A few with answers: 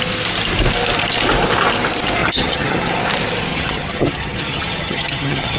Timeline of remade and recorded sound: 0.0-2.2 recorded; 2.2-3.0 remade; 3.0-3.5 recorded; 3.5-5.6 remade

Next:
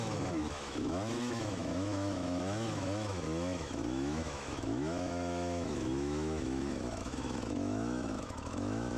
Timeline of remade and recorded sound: 0.0-9.0 remade

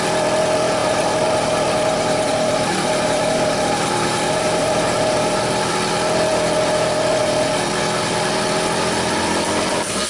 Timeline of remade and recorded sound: 0.0-0.8 recorded; 0.8-5.4 remade; 5.4-10.1 recorded

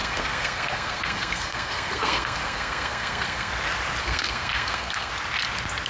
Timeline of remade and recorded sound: 0.0-3.5 remade; 3.5-4.0 recorded; 4.0-5.1 remade; 5.1-5.9 recorded